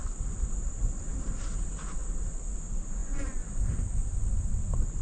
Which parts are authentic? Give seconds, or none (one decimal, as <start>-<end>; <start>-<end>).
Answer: 0.0-3.0; 3.6-5.0